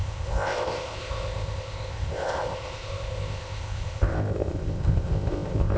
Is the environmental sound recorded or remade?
remade